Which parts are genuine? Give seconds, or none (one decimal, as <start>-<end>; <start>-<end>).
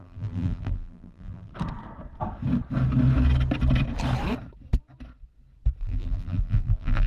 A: 1.5-5.8